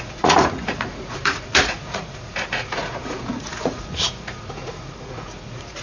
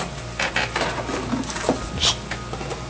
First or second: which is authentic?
second